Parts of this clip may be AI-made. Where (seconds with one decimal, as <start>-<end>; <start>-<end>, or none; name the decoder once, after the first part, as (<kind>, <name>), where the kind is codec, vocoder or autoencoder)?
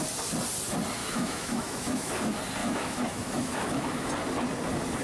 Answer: 1.0-2.1 (autoencoder, DAC-VAE); 2.6-4.1